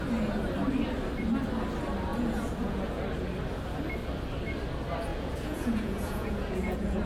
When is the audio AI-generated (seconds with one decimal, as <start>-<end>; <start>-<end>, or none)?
2.1-3.0; 5.1-7.1